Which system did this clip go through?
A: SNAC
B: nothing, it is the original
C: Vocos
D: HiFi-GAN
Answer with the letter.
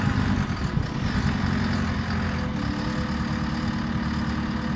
B